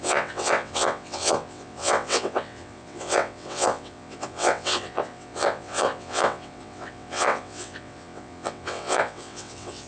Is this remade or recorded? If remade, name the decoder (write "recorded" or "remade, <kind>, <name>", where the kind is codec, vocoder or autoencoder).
remade, vocoder, WaveNeXt